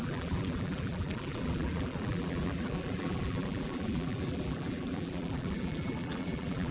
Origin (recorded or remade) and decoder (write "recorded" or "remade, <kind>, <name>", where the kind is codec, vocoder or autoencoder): remade, vocoder, BigVGAN v2